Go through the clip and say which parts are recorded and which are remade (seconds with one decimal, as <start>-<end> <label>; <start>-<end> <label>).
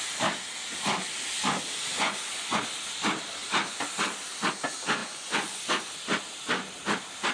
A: 0.0-1.9 recorded; 1.9-2.6 remade; 2.6-5.0 recorded; 5.0-5.6 remade; 5.6-7.3 recorded